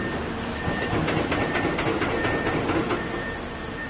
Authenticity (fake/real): real